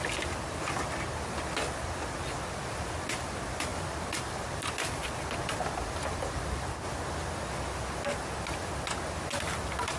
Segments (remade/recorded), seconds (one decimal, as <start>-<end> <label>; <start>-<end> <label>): 0.0-3.7 recorded; 3.7-7.0 remade; 7.0-10.0 recorded